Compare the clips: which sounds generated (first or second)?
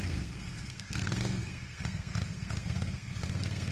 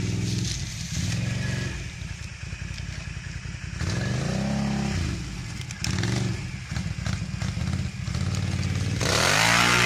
first